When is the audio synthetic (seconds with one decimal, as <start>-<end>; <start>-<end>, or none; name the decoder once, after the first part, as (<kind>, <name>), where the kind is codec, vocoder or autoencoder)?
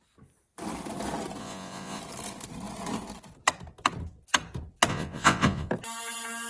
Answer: 1.4-2.0 (vocoder, Vocos); 4.9-5.7